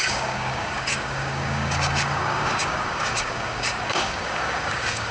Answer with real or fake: fake